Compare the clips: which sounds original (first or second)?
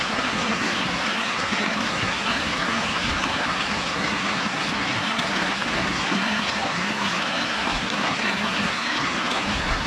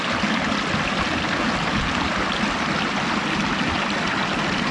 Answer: second